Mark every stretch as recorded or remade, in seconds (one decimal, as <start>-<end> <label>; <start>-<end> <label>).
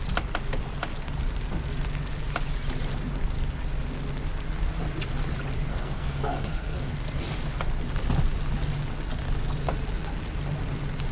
0.0-5.7 recorded; 5.7-6.9 remade; 6.9-11.1 recorded